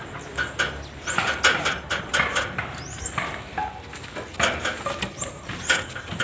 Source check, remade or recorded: recorded